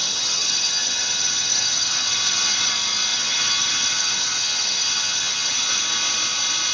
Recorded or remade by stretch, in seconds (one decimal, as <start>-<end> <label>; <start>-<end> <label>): 0.0-2.7 remade; 2.7-3.1 recorded; 3.1-5.8 remade; 5.8-6.7 recorded